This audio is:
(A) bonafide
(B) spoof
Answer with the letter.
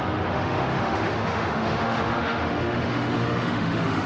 B